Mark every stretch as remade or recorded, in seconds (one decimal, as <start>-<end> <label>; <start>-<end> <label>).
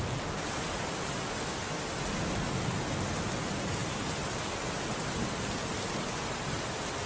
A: 0.0-7.1 recorded